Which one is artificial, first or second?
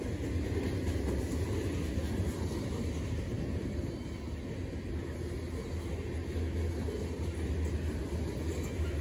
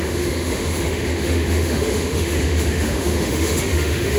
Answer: second